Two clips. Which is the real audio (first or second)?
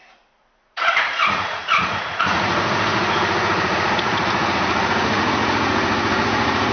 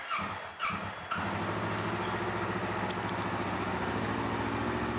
second